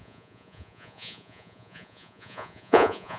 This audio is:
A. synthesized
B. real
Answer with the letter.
A